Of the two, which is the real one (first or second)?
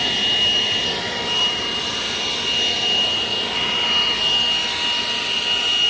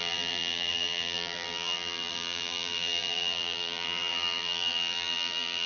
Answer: first